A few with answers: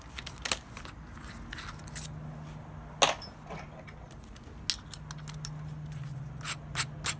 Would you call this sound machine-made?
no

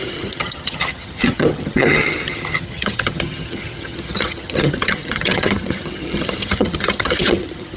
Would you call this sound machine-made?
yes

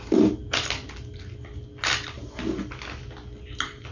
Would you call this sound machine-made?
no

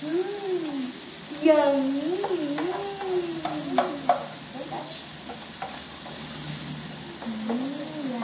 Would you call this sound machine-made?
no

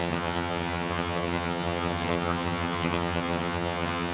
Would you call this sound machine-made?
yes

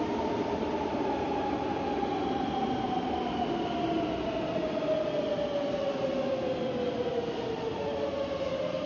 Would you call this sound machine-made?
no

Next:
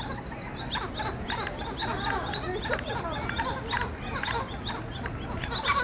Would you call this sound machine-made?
no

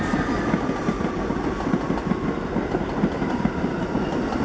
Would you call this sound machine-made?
no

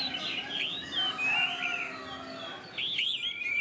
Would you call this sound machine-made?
no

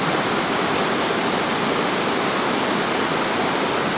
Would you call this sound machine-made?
no